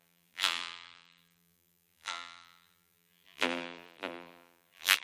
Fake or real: fake